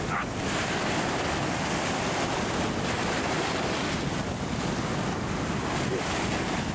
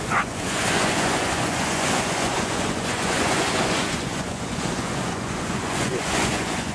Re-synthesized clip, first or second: second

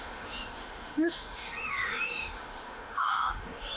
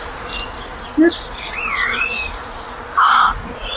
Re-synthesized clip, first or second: first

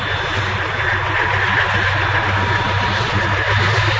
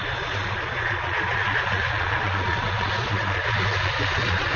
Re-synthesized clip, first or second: second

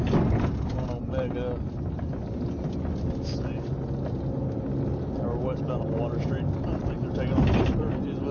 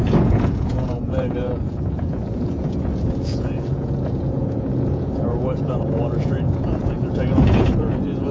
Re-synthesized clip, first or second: second